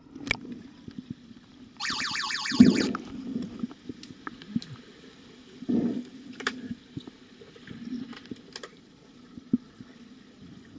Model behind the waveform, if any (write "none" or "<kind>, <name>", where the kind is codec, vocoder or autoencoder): none